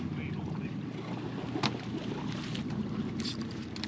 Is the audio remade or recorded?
recorded